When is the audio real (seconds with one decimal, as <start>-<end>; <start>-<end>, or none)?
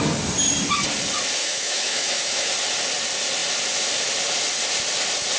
0.0-1.4; 2.5-5.4